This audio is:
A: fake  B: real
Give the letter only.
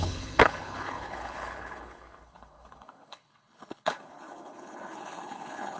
A